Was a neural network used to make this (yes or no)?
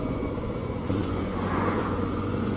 yes